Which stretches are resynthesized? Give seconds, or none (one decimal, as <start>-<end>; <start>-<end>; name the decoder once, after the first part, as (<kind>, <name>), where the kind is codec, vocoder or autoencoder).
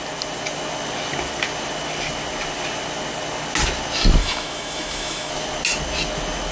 4.2-5.3 (autoencoder, DAC-VAE)